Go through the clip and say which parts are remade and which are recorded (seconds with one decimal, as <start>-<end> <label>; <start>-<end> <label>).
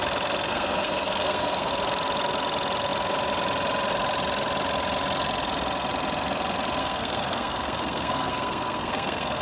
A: 0.0-0.5 recorded; 0.5-1.7 remade; 1.7-6.8 recorded; 6.8-9.4 remade